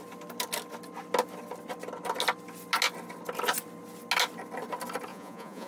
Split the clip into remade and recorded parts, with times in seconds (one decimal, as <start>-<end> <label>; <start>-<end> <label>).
0.0-5.1 recorded; 5.1-5.7 remade